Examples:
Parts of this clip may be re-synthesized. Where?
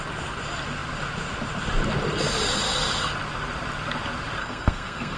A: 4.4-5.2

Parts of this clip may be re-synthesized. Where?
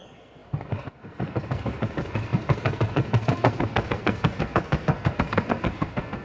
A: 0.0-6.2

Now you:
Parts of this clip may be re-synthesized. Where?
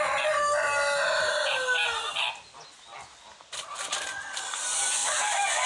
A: none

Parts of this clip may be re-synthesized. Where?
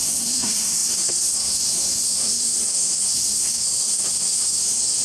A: 0.0-5.0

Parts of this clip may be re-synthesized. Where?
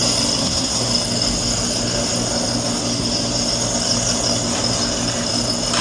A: 0.4-0.9